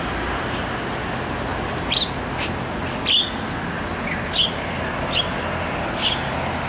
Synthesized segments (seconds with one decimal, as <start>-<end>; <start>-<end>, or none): none